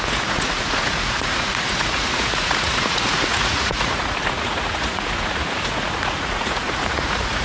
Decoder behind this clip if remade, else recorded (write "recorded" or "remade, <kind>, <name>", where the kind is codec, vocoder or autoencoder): remade, vocoder, Vocos